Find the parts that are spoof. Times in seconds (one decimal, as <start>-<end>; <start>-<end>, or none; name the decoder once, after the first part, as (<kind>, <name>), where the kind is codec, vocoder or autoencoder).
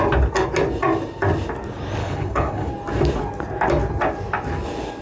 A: 2.0-2.7 (codec, HILCodec)